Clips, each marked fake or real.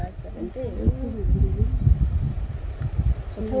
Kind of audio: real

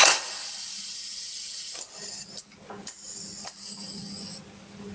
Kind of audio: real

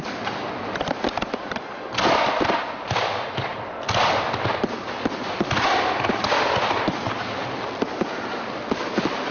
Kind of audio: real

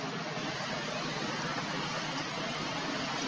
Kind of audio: real